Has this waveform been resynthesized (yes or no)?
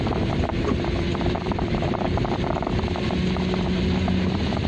no